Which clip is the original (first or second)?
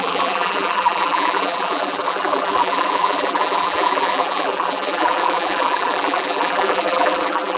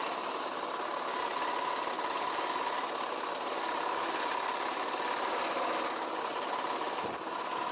second